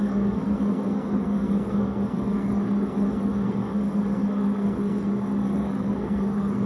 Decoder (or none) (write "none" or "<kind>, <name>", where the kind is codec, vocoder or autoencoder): codec, SNAC